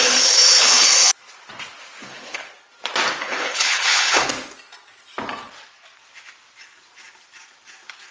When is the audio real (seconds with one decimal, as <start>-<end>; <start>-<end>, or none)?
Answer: 1.1-2.0; 2.5-3.2; 4.3-8.1